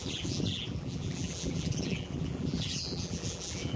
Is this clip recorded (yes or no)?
no